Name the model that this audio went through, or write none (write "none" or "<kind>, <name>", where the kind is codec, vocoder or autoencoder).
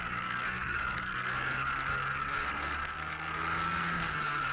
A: codec, SNAC